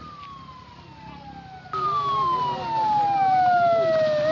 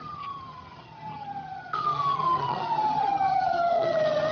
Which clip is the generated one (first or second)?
second